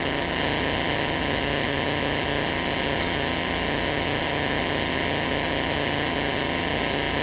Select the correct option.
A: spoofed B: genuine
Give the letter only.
A